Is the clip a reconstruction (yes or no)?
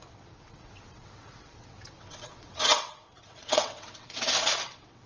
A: yes